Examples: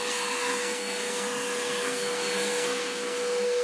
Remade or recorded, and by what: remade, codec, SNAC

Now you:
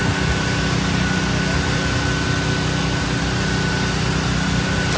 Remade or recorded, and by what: recorded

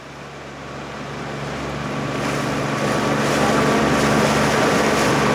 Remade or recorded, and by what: recorded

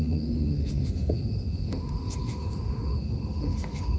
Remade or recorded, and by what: remade, autoencoder, DAC-VAE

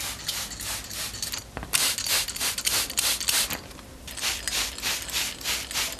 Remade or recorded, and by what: recorded